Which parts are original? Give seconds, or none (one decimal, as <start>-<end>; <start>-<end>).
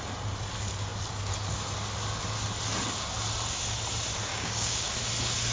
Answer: 0.0-4.3; 4.9-5.5